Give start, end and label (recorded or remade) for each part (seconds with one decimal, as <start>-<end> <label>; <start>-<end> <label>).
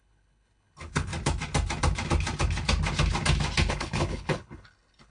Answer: 0.0-1.1 remade; 1.1-3.7 recorded; 3.7-5.1 remade